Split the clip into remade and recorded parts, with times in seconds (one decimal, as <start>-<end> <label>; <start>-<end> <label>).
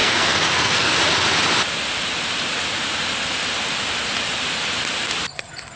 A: 0.0-1.0 remade; 1.0-5.8 recorded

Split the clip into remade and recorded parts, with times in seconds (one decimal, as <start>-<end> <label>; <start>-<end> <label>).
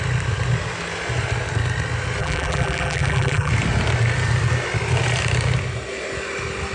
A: 0.0-2.2 recorded; 2.2-3.5 remade; 3.5-6.7 recorded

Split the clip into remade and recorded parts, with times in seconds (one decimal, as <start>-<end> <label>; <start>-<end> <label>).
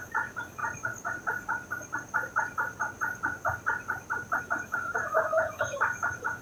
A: 0.0-0.6 remade; 0.6-4.4 recorded; 4.4-6.4 remade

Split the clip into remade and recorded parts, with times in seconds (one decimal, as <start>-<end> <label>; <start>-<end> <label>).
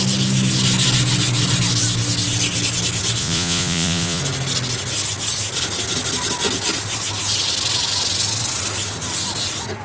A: 0.0-3.2 recorded; 3.2-4.2 remade; 4.2-9.8 recorded